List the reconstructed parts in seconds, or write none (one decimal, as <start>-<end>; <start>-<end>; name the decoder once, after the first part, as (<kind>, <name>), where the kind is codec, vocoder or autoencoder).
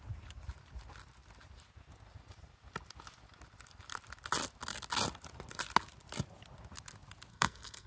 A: 7.3-7.9 (codec, SNAC)